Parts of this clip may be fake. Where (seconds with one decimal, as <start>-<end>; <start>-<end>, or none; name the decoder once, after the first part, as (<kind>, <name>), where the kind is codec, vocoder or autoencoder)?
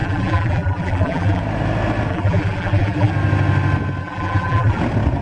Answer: 0.0-1.4 (vocoder, BigVGAN v2); 2.1-3.1; 4.0-4.8